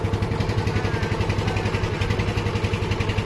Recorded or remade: recorded